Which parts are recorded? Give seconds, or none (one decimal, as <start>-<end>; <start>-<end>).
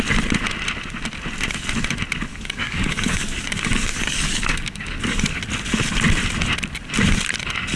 0.0-2.3; 5.4-7.8